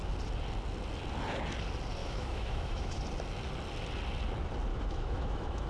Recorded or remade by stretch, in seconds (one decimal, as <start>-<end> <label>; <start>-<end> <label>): 0.0-2.0 recorded; 2.0-3.0 remade; 3.0-4.7 recorded; 4.7-5.7 remade